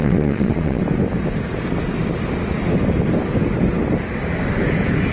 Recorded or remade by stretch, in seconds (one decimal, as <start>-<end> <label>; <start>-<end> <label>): 0.0-0.8 remade; 0.8-5.1 recorded